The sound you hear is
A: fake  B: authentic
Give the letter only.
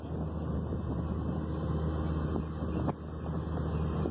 B